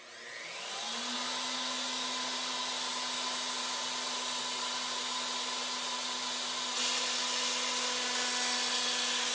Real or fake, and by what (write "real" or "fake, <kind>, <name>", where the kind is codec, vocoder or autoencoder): real